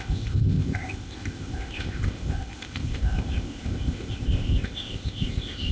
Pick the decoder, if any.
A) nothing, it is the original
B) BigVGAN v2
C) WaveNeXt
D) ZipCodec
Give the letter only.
D